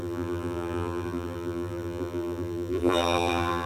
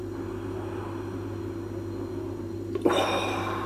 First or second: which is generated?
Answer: first